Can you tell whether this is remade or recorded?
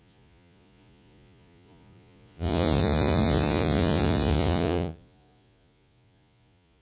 remade